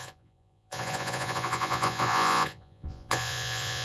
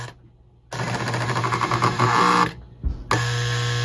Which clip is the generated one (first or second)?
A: first